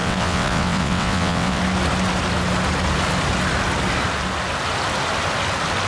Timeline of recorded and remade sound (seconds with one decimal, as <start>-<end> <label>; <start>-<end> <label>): 0.0-1.6 remade; 1.6-5.9 recorded